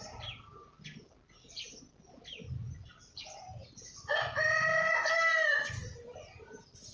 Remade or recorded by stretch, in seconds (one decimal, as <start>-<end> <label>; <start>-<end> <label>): 0.0-6.9 recorded